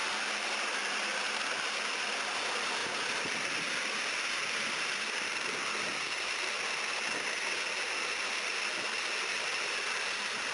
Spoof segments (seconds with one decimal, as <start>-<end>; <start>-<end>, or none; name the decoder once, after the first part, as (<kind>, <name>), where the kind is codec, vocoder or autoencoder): none